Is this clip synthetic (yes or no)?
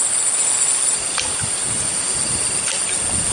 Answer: no